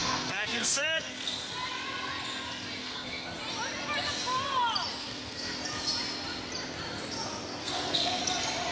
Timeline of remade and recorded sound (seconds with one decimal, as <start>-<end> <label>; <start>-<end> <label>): 0.0-1.5 remade; 1.5-2.8 recorded; 2.8-3.4 remade; 3.4-5.0 recorded; 5.0-5.6 remade; 5.6-7.6 recorded; 7.6-8.2 remade; 8.2-8.7 recorded